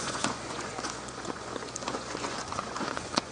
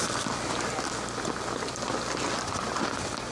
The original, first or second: second